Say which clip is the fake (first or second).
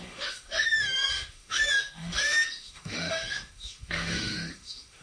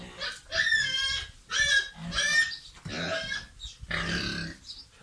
first